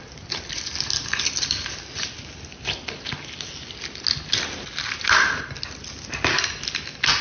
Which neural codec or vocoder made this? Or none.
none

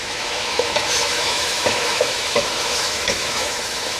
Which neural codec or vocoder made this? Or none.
autoencoder, DAC-VAE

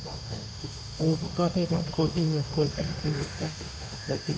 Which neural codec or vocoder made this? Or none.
autoencoder, DAC-VAE